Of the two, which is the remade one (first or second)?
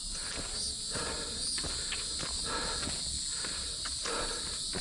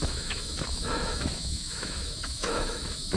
second